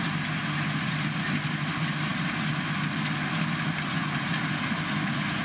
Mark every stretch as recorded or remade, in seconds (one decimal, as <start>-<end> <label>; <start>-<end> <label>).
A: 0.0-5.4 recorded